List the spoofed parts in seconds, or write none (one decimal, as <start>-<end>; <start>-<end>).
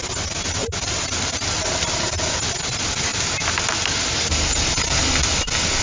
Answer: 0.6-1.9